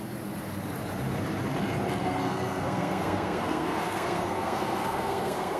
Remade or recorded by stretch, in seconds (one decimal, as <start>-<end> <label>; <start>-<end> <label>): 0.0-2.0 recorded; 2.0-5.6 remade